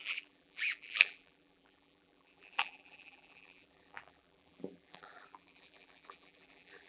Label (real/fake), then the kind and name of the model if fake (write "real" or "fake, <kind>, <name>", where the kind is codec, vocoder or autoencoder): fake, vocoder, BigVGAN v2